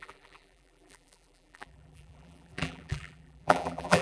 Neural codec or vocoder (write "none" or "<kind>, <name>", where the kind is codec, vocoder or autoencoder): vocoder, BigVGAN v2